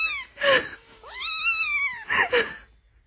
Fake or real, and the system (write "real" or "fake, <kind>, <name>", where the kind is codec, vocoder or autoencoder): real